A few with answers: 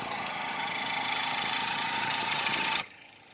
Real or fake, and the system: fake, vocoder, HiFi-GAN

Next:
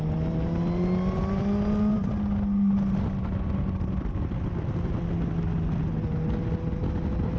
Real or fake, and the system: real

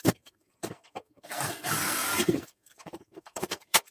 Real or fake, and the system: fake, codec, SNAC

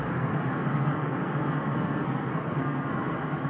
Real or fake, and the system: fake, codec, SNAC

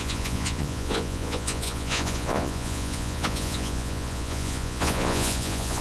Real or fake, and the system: fake, vocoder, Vocos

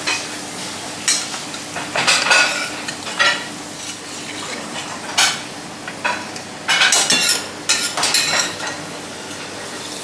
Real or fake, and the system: real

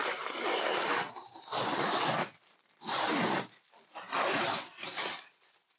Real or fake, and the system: fake, vocoder, BigVGAN v2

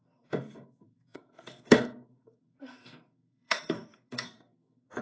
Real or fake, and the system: fake, codec, SNAC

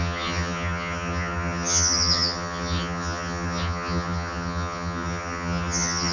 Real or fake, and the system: fake, vocoder, HiFi-GAN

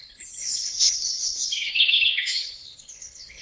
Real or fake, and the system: fake, codec, HILCodec